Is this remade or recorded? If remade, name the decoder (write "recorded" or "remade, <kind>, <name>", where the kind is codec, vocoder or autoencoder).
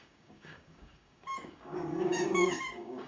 remade, codec, DAC